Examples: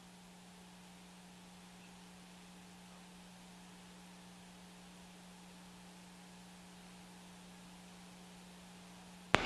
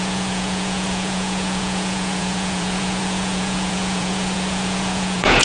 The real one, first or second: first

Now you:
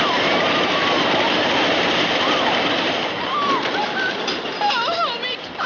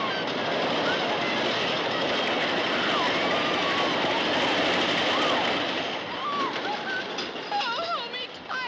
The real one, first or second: second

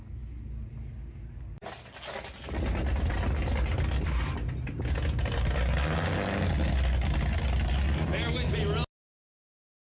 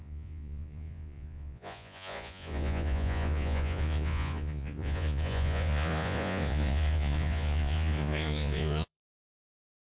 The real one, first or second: first